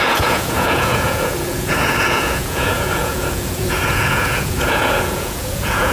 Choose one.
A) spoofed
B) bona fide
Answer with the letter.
A